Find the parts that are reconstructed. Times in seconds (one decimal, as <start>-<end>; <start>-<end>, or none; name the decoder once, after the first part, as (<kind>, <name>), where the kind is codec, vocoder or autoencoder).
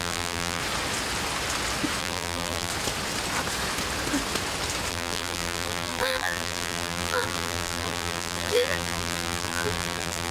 0.0-0.6 (vocoder, BigVGAN v2); 2.0-2.7; 4.9-10.3